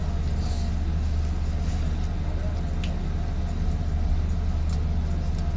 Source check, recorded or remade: recorded